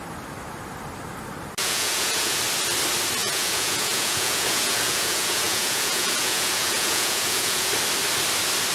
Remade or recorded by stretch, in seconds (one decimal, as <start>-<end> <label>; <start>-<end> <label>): 0.0-1.6 recorded; 1.6-2.4 remade; 2.4-3.2 recorded; 3.2-7.7 remade; 7.7-8.7 recorded